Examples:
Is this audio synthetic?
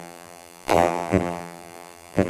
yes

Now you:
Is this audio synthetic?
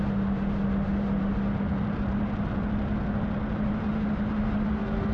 no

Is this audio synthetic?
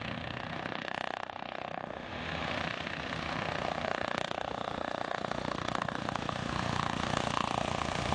yes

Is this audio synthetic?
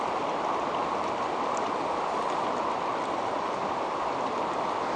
no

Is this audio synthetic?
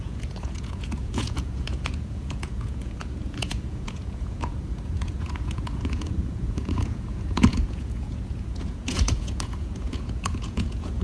yes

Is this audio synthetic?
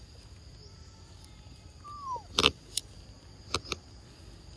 no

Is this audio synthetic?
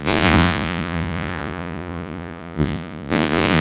yes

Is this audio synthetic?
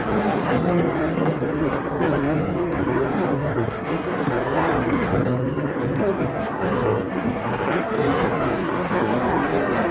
yes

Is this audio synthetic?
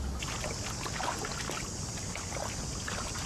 no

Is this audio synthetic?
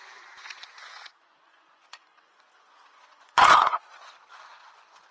yes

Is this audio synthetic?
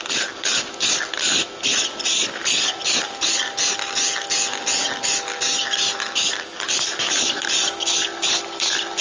no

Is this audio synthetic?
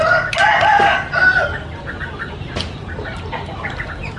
no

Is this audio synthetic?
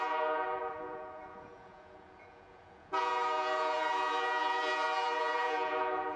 yes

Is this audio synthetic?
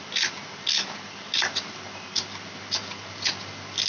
no